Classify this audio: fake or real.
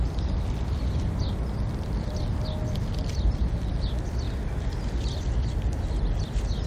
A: real